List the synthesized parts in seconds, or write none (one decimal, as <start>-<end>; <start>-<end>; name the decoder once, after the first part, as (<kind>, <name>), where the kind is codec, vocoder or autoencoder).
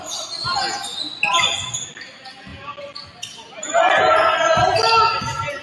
none